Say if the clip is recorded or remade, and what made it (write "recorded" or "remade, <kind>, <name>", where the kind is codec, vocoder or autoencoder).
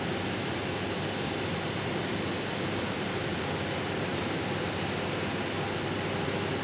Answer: recorded